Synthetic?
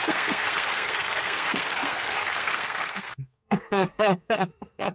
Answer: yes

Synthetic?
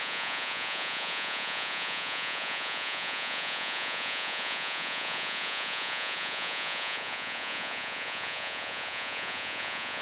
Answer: yes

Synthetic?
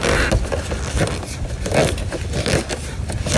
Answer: no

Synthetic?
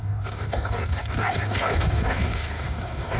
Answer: yes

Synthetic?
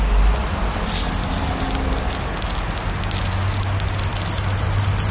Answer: no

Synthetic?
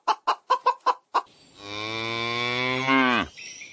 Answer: no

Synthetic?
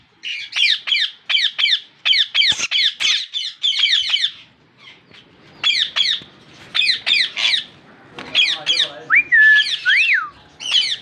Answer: no